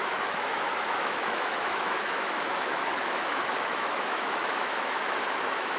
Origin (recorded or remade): remade